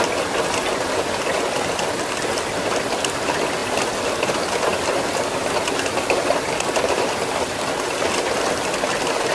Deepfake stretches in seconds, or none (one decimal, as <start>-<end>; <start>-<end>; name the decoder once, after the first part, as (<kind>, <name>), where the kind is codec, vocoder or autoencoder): none